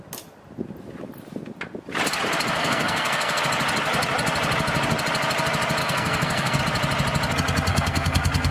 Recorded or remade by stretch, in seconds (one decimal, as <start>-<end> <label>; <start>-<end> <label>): 0.0-2.6 recorded; 2.6-3.4 remade; 3.4-5.8 recorded; 5.8-6.6 remade; 6.6-7.7 recorded; 7.7-8.5 remade